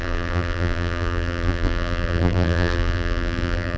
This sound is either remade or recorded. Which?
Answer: remade